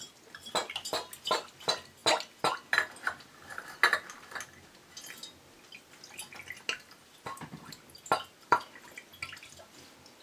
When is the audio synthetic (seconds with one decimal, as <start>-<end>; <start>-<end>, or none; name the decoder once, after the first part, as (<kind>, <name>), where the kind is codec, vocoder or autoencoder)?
none